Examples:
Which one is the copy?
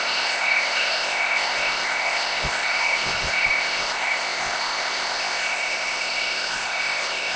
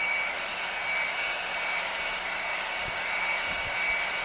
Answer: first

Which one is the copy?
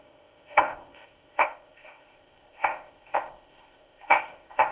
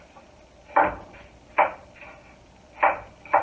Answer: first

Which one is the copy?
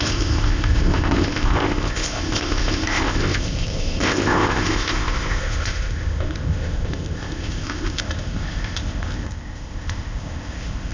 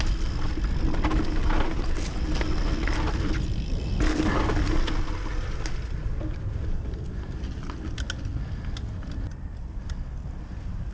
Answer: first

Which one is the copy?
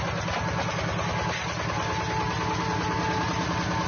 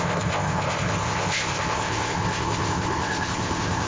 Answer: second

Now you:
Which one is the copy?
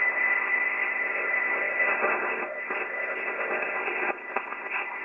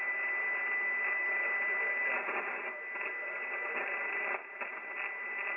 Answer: first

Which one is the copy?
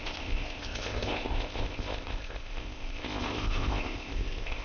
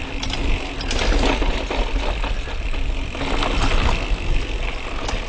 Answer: first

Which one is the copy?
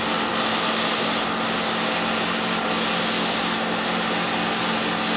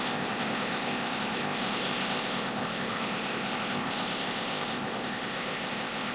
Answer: second